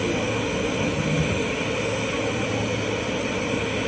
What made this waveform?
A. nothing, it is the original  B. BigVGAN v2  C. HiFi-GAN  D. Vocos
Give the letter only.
A